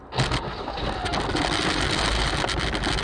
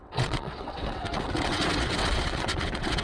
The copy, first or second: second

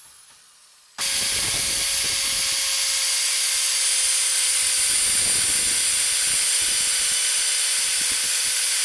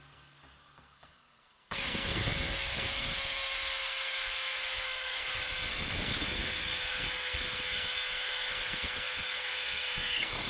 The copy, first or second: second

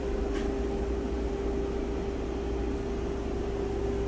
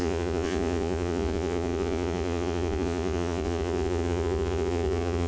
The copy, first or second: second